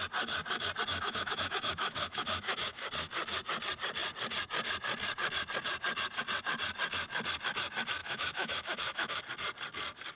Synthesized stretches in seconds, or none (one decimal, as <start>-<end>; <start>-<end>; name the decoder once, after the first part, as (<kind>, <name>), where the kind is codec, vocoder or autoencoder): 0.9-2.8 (autoencoder, DAC-VAE); 8.0-9.2